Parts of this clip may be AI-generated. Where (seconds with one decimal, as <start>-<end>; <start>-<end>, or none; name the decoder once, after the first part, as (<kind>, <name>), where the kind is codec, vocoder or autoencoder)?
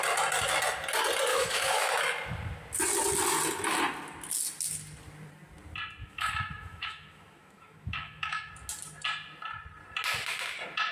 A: 1.3-1.9 (autoencoder, DAC-VAE); 6.0-8.5